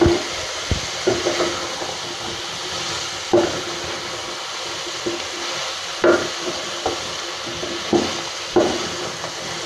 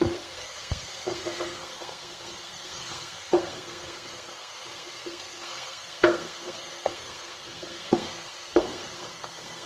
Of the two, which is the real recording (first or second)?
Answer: first